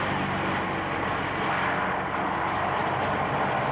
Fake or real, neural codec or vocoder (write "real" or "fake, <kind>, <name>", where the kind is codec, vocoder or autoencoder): real